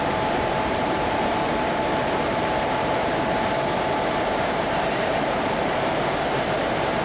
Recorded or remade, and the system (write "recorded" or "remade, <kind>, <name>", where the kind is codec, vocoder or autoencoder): remade, vocoder, BigVGAN v2